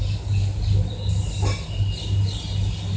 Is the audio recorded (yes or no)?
yes